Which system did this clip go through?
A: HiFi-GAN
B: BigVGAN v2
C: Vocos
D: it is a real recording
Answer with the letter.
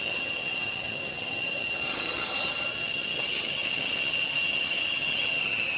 A